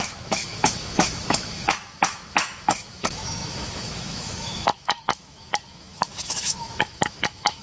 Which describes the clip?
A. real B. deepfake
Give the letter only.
B